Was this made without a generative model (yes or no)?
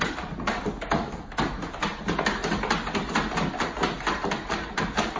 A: yes